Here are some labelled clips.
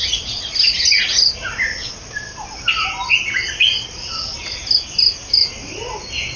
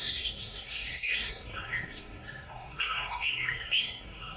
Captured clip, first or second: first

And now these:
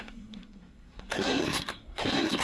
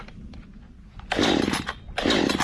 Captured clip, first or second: second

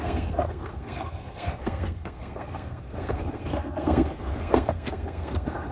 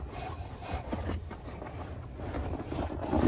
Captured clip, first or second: second